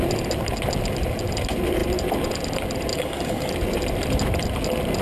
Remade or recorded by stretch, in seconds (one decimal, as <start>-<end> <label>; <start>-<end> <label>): 0.0-2.9 recorded; 2.9-3.5 remade; 3.5-5.0 recorded